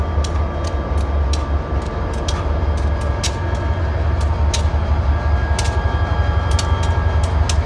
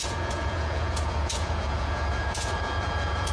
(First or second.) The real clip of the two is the first